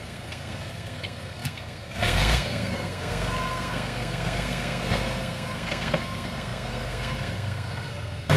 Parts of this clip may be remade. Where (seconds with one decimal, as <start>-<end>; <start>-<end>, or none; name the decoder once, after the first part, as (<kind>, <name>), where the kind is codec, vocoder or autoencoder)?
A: 0.0-8.4 (codec, SNAC)